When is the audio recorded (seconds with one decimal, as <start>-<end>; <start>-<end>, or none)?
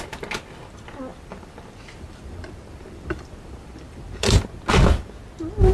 0.0-1.1; 4.4-5.7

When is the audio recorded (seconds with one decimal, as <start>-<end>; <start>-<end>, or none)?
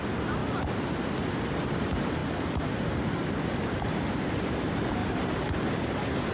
0.4-1.6; 2.2-3.6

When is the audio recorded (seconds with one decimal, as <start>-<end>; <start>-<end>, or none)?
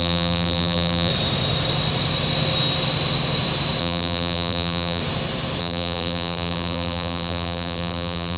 1.1-3.8; 5.0-5.6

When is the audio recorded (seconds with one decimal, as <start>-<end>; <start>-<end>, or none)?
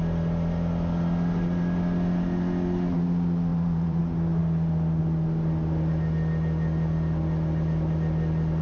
0.0-3.5; 4.0-8.6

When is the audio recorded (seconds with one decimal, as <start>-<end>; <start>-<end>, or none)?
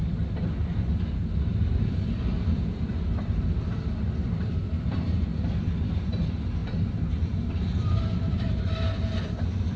0.0-1.5; 4.6-6.6; 8.6-9.8